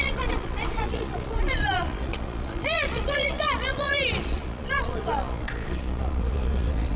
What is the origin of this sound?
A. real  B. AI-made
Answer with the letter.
B